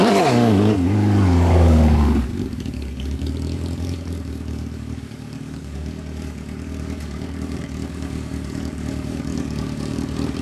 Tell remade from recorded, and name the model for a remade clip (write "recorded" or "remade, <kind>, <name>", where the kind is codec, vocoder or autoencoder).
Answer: remade, codec, DAC